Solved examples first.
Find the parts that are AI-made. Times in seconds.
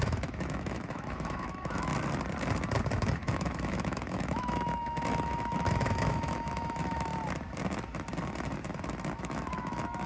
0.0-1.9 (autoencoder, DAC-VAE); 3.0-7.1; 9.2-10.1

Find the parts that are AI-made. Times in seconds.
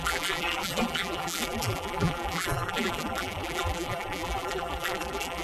0.0-5.4 (vocoder, BigVGAN v2)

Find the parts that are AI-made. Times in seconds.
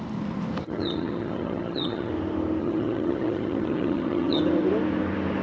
0.6-2.1 (vocoder, HiFi-GAN); 2.6-4.4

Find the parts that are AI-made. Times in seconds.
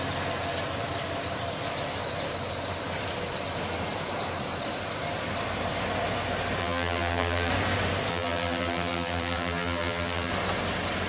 6.6-7.5 (vocoder, BigVGAN v2); 8.1-10.3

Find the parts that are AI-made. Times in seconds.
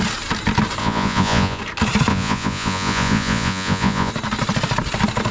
0.8-1.6 (vocoder, Vocos); 2.1-4.1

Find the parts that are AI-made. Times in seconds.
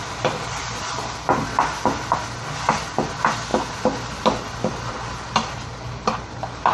none